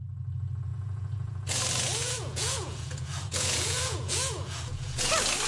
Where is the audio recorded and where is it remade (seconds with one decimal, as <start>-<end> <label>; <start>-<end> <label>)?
0.0-0.7 recorded; 0.7-1.6 remade; 1.6-2.0 recorded; 2.0-5.1 remade; 5.1-5.5 recorded